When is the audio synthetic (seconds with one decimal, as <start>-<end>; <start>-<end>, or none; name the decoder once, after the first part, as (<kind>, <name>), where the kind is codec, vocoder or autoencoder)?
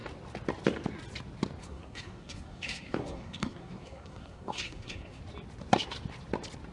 1.6-5.2 (codec, SNAC)